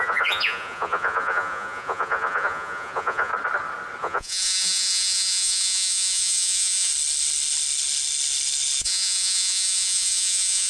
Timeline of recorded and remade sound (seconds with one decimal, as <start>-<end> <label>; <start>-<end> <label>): 0.0-3.3 remade; 3.3-4.0 recorded; 4.0-6.9 remade; 6.9-8.8 recorded; 8.8-10.7 remade